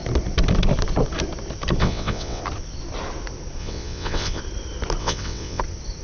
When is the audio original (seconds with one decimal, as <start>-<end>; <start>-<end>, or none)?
0.0-1.8; 2.4-3.6; 4.4-5.0; 5.6-6.0